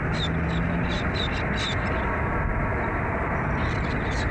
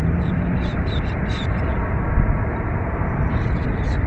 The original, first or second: first